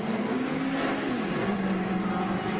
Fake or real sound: real